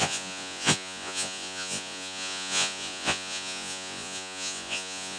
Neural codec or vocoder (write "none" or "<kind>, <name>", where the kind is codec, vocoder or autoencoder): vocoder, Vocos